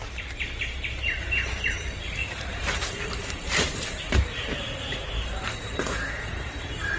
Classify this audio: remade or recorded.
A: remade